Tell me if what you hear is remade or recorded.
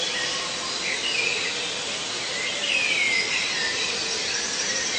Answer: remade